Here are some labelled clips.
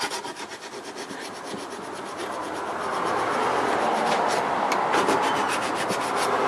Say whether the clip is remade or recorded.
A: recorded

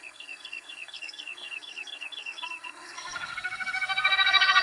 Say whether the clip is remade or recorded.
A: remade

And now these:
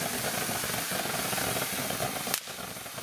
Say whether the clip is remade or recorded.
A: recorded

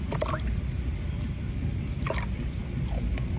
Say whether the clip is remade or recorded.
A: recorded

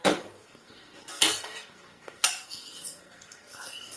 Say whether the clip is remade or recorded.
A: remade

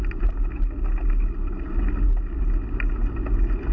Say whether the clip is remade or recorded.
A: recorded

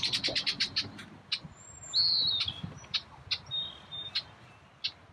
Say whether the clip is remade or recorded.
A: recorded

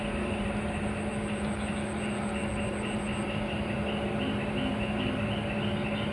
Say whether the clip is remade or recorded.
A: recorded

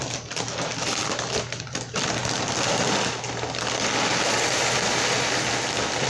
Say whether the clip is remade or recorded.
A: recorded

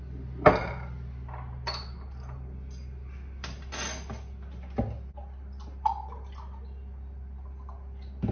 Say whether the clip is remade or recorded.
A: recorded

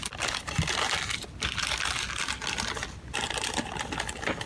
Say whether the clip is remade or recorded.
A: recorded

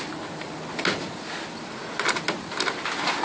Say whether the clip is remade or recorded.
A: recorded